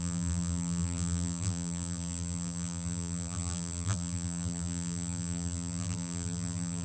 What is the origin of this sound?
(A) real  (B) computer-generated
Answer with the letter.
B